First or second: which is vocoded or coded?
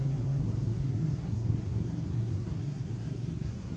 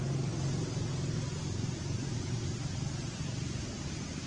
first